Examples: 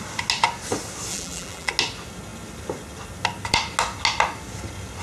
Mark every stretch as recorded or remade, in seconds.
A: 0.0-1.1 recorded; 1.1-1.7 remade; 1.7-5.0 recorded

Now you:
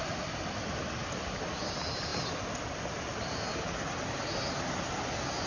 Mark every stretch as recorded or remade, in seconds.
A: 0.0-5.5 recorded

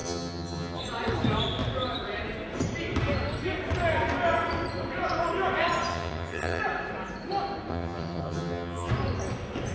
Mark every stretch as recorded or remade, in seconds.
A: 0.0-0.8 remade; 0.8-5.9 recorded; 5.9-6.6 remade; 6.6-7.7 recorded; 7.7-8.9 remade; 8.9-9.7 recorded

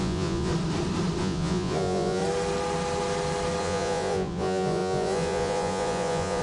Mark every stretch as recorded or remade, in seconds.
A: 0.0-0.5 remade; 0.5-1.2 recorded; 1.2-2.2 remade; 2.2-3.6 recorded; 3.6-6.4 remade

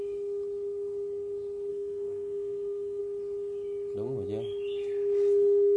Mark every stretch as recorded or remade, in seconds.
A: 0.0-1.7 recorded; 1.7-3.0 remade; 3.0-5.8 recorded

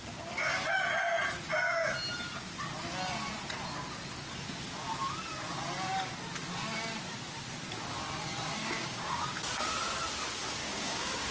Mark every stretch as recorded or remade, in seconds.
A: 0.0-8.6 recorded; 8.6-9.2 remade; 9.2-10.6 recorded; 10.6-11.3 remade

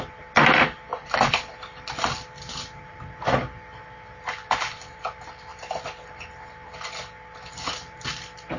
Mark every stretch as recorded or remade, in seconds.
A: 0.0-0.9 recorded; 0.9-1.5 remade; 1.5-5.5 recorded; 5.5-6.1 remade; 6.1-8.6 recorded